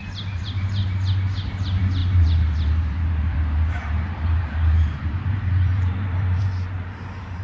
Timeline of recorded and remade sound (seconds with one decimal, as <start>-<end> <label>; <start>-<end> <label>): 0.0-0.8 remade; 0.8-1.5 recorded; 1.5-7.4 remade